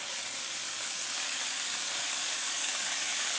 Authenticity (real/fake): fake